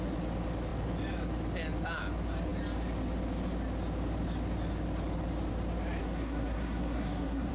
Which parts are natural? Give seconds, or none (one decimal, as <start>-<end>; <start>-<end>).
0.0-6.0